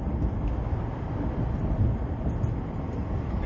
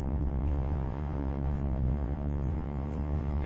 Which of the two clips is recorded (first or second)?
first